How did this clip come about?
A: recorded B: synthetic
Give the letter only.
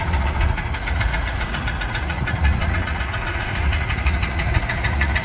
B